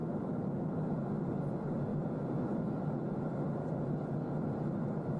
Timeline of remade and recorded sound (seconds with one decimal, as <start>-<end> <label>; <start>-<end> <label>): 0.0-5.2 recorded